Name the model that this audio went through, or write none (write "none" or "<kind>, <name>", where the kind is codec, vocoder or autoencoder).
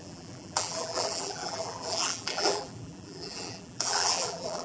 vocoder, BigVGAN v2